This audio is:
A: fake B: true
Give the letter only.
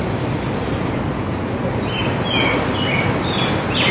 B